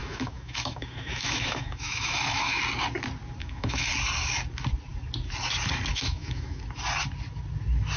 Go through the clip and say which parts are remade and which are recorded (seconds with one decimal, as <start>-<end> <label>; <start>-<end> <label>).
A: 0.0-2.6 remade; 2.6-3.4 recorded; 3.4-3.9 remade; 3.9-5.9 recorded; 5.9-6.6 remade; 6.6-8.0 recorded